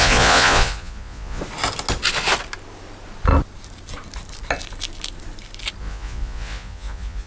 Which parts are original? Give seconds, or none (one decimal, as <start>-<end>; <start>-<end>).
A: 1.4-5.8